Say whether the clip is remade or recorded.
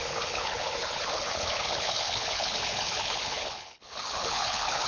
remade